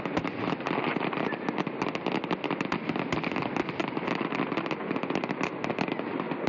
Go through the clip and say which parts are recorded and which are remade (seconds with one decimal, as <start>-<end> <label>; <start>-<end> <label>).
0.0-6.5 recorded